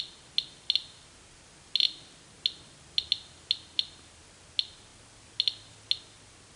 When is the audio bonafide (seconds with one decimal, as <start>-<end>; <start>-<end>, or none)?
0.0-6.6

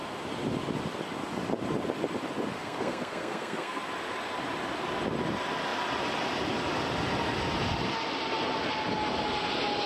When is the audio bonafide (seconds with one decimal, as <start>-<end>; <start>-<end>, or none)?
0.0-2.6; 3.8-9.9

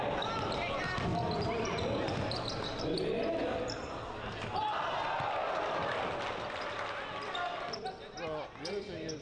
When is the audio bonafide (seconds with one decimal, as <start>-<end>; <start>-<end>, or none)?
0.0-9.2

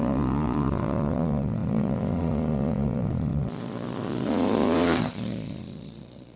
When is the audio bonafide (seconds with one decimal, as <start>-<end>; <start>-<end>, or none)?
none

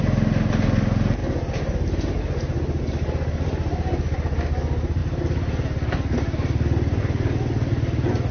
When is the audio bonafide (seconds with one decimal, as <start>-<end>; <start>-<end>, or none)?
0.0-8.3

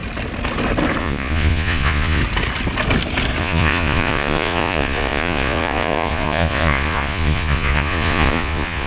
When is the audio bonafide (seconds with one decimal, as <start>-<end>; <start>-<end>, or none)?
0.0-1.0; 2.2-3.4

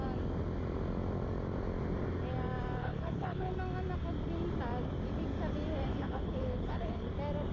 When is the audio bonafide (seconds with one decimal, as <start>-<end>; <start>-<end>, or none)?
0.0-2.8; 3.5-5.9; 7.1-7.5